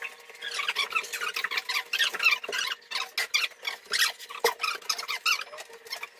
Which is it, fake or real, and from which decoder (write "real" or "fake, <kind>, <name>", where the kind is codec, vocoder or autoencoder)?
real